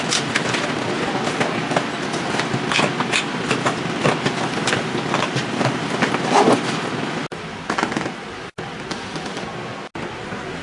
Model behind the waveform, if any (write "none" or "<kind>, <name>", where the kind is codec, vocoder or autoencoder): none